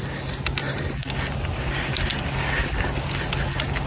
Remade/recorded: recorded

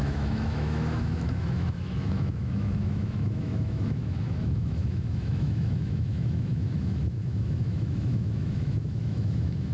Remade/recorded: remade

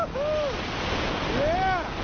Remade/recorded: recorded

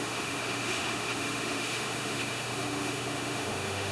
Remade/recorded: remade